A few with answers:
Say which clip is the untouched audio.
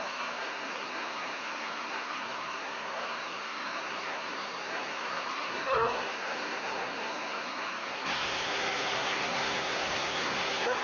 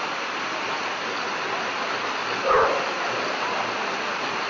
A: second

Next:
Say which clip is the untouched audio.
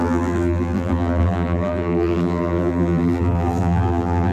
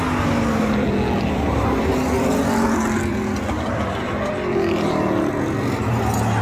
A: second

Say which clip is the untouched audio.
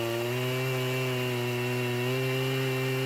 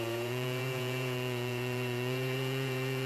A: first